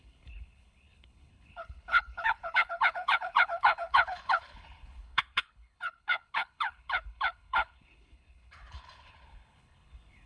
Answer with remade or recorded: remade